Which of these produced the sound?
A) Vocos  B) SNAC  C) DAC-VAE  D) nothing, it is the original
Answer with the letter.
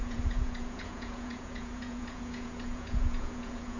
A